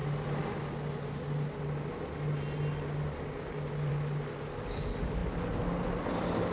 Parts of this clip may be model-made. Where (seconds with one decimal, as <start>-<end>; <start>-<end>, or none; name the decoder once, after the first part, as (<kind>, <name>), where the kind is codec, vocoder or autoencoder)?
none